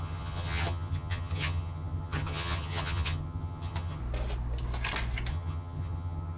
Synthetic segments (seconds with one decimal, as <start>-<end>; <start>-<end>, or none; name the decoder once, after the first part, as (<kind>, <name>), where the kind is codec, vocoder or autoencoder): 0.0-4.0 (vocoder, HiFi-GAN); 5.3-6.4